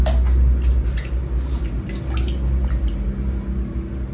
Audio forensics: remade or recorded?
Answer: recorded